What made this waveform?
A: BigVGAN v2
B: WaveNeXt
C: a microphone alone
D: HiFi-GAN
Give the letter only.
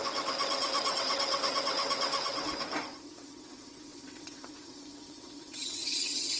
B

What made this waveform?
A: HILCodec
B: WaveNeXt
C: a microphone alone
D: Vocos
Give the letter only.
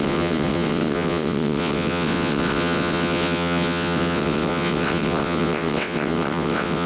B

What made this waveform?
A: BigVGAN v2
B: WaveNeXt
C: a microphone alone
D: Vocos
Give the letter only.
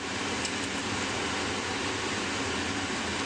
C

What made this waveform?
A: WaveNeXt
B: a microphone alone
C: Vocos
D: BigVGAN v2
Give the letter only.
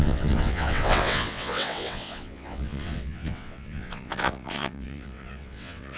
A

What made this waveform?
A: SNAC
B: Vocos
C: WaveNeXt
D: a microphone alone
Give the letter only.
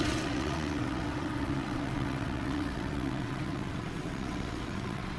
C